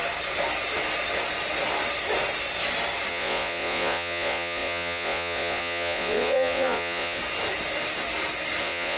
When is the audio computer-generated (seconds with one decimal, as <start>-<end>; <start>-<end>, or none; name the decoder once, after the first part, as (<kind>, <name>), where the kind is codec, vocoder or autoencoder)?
3.1-7.2 (vocoder, Vocos); 8.6-9.0